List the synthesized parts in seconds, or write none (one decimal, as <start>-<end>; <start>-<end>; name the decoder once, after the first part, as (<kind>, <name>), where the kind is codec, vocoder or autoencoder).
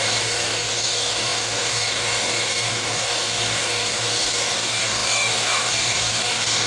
0.0-6.7 (codec, DAC)